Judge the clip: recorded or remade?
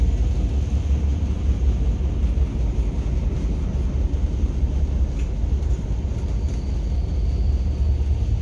recorded